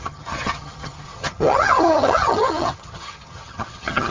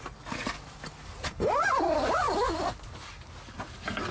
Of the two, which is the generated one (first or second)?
first